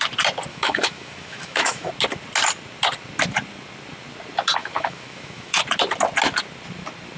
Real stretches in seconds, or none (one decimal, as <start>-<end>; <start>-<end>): 0.0-0.5; 1.9-4.6; 5.6-7.2